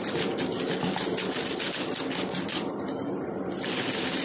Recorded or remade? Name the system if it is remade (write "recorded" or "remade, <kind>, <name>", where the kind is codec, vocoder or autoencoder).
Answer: recorded